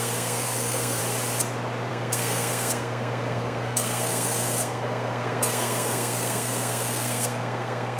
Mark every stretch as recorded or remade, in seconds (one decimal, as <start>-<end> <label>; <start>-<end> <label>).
0.0-1.0 remade; 1.0-1.9 recorded; 1.9-8.0 remade